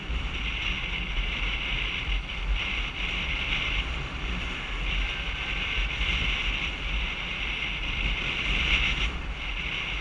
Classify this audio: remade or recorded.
remade